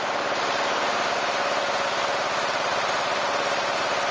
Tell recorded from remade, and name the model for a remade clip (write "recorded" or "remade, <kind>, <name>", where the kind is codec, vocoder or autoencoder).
recorded